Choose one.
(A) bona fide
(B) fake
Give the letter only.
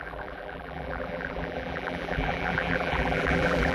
B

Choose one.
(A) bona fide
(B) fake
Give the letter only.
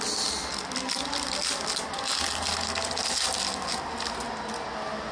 A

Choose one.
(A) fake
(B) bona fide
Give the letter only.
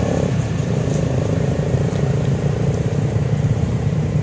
A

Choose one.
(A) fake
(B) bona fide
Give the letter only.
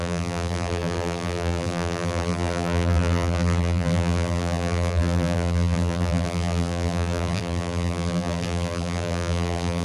A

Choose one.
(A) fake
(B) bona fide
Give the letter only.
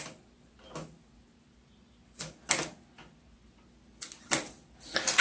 B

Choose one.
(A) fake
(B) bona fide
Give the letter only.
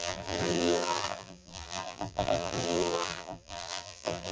A